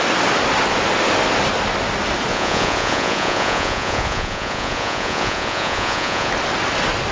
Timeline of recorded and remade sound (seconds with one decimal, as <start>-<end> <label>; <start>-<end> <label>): 0.0-2.3 recorded; 2.3-6.3 remade; 6.3-7.1 recorded